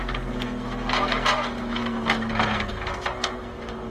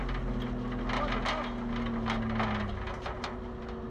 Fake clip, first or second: first